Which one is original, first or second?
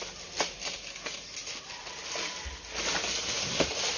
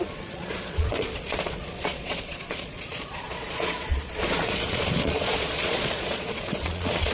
first